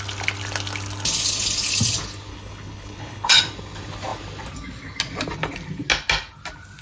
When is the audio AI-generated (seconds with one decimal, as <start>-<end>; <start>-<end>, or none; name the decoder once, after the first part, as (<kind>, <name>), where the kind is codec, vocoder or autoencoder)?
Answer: 2.3-3.4 (codec, HILCodec)